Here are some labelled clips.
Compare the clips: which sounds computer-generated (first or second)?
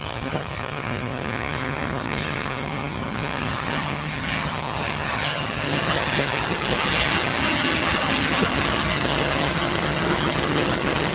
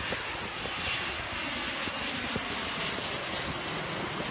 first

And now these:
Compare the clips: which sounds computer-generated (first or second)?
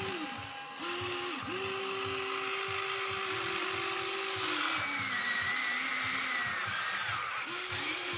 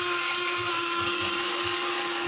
second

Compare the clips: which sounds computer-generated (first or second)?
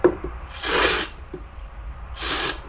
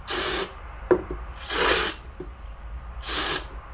first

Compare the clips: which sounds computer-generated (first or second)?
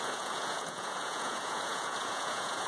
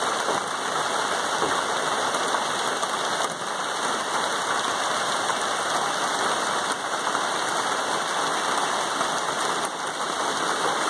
first